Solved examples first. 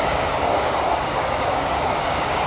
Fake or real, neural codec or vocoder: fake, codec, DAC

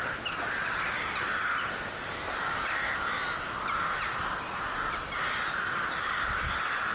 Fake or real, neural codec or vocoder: real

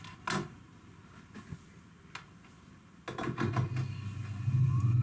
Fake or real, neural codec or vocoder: real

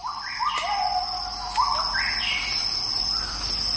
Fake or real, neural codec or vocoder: real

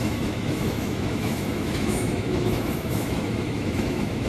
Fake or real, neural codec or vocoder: fake, autoencoder, DAC-VAE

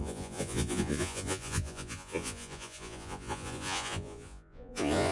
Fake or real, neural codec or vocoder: fake, vocoder, Vocos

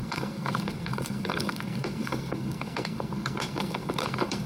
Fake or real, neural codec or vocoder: fake, codec, SNAC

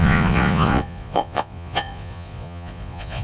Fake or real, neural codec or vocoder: fake, vocoder, Vocos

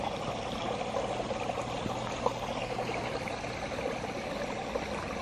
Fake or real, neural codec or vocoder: real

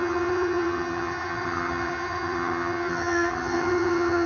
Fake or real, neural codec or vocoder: fake, vocoder, HiFi-GAN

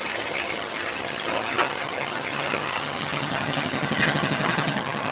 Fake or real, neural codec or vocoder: fake, vocoder, HiFi-GAN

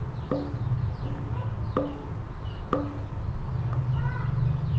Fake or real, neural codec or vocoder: real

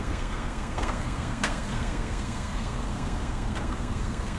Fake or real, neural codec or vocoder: fake, codec, SNAC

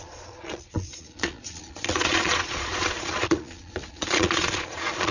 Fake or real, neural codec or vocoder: fake, vocoder, Vocos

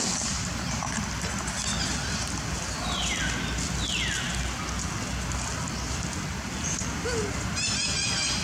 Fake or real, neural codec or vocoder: real